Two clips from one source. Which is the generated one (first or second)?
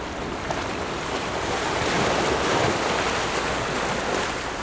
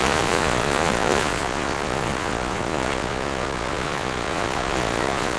second